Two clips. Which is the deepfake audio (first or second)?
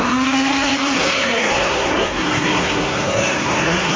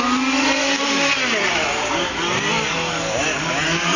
first